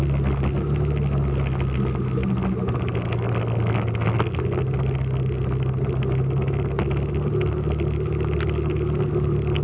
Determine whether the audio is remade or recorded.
recorded